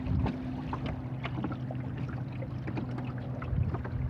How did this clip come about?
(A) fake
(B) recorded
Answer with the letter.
A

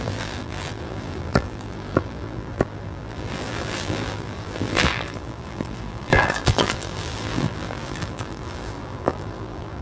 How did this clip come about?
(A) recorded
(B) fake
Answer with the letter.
B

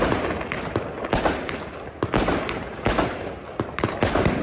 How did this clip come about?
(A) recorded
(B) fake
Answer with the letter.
A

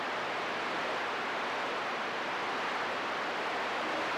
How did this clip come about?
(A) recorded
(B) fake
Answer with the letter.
B